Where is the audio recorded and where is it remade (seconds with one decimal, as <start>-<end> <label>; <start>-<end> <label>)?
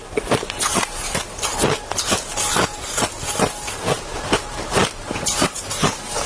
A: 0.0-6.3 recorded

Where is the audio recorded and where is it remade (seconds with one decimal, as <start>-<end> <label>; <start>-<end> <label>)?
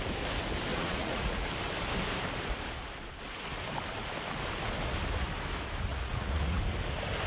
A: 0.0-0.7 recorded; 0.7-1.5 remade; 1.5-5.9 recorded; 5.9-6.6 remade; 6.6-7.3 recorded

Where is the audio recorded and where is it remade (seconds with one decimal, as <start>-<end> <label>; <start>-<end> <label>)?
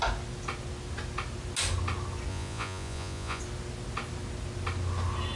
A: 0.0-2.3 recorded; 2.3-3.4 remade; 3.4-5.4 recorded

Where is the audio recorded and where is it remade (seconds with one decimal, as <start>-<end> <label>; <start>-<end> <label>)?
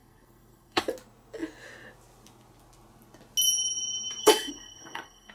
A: 0.0-0.8 remade; 0.8-4.2 recorded; 4.2-5.3 remade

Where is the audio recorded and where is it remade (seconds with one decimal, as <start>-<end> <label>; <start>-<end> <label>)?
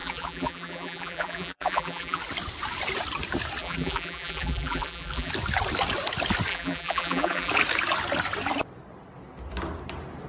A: 0.0-2.2 remade; 2.2-3.6 recorded; 3.6-5.3 remade; 5.3-6.5 recorded; 6.5-7.5 remade; 7.5-10.3 recorded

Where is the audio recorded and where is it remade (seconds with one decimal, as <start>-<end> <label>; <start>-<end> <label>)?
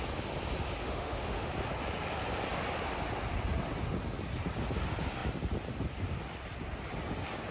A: 0.0-0.8 recorded; 0.8-1.5 remade; 1.5-7.5 recorded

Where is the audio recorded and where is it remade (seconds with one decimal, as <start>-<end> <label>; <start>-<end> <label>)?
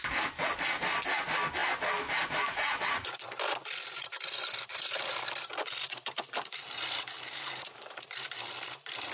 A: 0.0-9.1 recorded